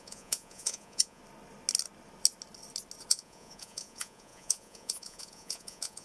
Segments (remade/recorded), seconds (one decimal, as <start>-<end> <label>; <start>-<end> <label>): 0.0-1.2 remade; 1.2-3.1 recorded; 3.1-6.0 remade